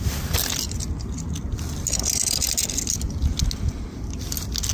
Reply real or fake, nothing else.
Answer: real